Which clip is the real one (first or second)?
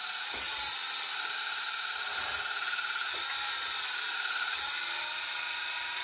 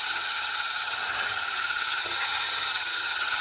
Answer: first